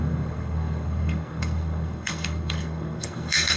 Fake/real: fake